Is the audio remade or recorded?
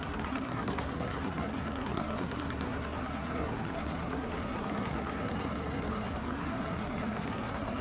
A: remade